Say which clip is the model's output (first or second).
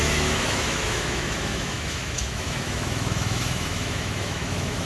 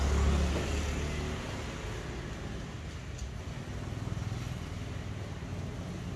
first